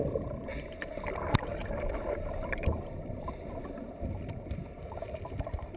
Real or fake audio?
real